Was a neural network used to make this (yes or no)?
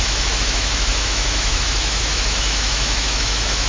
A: yes